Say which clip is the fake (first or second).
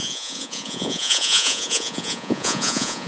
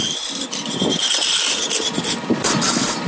first